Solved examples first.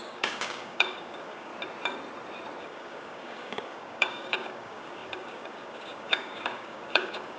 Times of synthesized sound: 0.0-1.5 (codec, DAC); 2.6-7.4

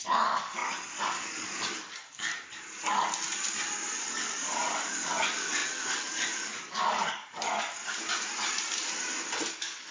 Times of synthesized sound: 0.0-2.3 (codec, DAC); 4.0-7.8; 9.5-9.9

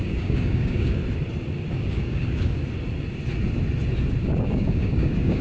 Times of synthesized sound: 0.0-1.0 (codec, DAC); 1.7-2.6; 4.2-5.4

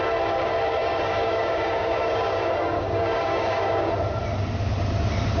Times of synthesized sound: 0.8-3.9 (codec, DAC)

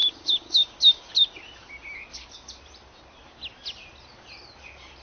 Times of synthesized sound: 0.0-1.1 (codec, DAC)